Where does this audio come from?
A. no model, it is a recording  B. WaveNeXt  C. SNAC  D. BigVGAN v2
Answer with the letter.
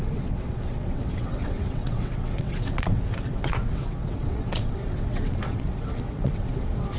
B